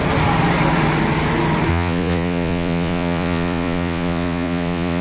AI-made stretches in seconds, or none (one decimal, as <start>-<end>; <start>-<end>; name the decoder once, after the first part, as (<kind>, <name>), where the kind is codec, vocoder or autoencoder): 1.7-5.0 (vocoder, Vocos)